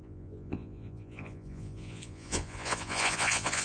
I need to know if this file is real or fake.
fake